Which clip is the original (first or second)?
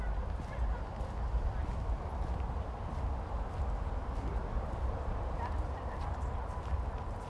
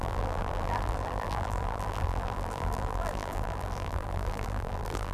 first